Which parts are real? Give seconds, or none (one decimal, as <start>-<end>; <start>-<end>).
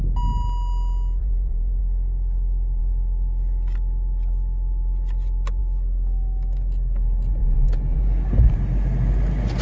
0.0-1.2; 1.8-7.4; 8.0-9.6